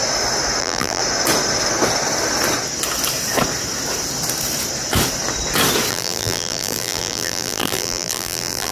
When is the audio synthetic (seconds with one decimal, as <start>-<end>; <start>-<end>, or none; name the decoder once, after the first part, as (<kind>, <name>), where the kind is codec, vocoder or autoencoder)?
0.6-1.0 (vocoder, BigVGAN v2); 5.9-8.7